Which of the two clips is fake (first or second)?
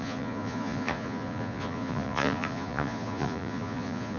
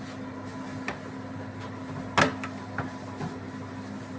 first